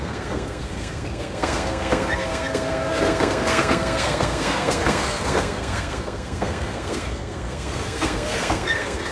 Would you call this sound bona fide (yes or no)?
no